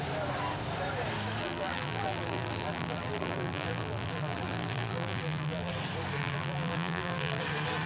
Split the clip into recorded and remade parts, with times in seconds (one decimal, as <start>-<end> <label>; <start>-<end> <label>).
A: 0.0-1.4 recorded; 1.4-5.7 remade; 5.7-6.2 recorded; 6.2-7.4 remade; 7.4-7.9 recorded